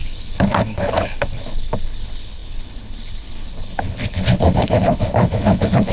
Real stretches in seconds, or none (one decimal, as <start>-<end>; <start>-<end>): none